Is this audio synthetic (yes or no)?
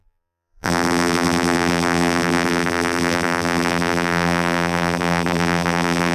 yes